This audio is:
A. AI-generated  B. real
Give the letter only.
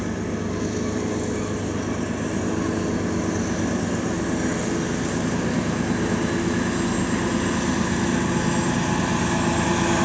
B